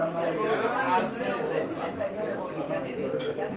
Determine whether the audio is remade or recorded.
remade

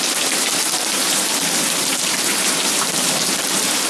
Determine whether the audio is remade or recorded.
remade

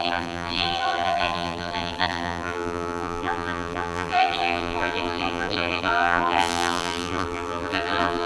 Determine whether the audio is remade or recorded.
remade